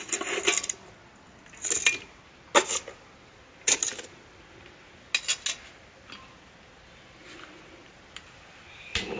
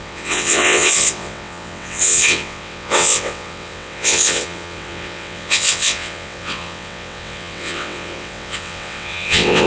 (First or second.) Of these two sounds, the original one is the first